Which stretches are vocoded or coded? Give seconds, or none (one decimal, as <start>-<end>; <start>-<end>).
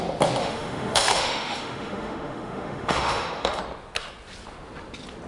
0.4-3.6